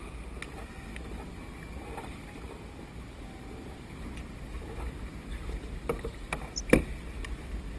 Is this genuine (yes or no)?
yes